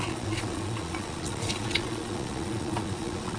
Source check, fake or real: fake